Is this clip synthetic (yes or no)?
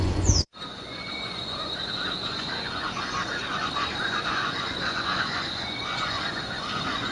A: yes